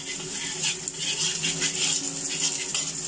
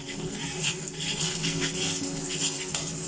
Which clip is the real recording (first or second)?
first